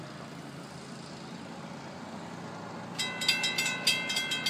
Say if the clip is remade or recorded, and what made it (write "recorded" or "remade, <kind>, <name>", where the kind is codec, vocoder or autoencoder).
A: recorded